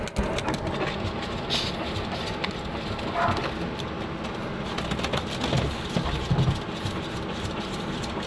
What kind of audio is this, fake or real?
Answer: real